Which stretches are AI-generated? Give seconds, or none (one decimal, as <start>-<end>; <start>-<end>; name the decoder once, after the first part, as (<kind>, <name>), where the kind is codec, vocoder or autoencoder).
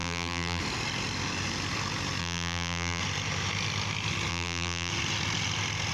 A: 0.0-0.6 (vocoder, BigVGAN v2); 2.2-3.0; 4.3-4.9